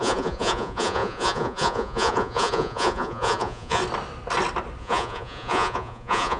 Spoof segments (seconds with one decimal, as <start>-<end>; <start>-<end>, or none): 0.0-3.8; 4.8-6.4